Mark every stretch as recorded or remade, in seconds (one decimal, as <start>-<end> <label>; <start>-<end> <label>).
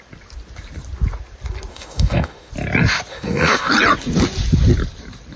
0.0-1.7 recorded; 1.7-2.5 remade; 2.5-3.1 recorded; 3.1-3.7 remade; 3.7-5.4 recorded